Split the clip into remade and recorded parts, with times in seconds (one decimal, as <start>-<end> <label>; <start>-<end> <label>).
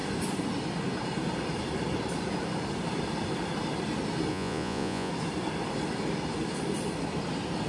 0.0-4.3 recorded; 4.3-5.1 remade; 5.1-7.7 recorded